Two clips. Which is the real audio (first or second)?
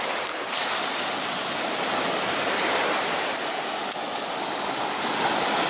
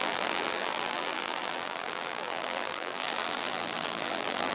first